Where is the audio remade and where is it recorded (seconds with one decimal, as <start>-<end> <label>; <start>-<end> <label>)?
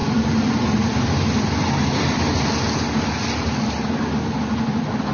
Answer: 0.0-5.1 recorded